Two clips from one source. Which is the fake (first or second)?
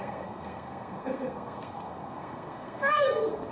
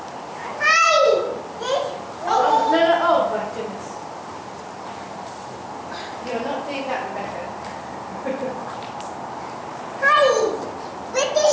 first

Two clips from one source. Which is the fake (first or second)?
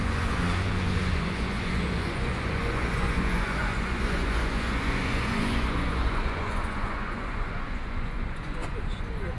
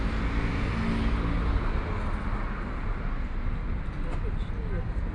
first